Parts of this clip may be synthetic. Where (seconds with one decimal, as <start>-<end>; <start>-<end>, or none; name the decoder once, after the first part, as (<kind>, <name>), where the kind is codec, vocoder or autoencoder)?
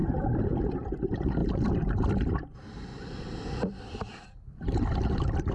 none